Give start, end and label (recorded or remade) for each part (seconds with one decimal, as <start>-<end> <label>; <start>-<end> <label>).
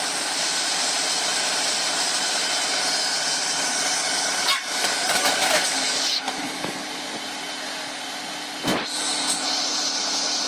0.0-3.7 recorded; 3.7-6.8 remade; 6.8-10.5 recorded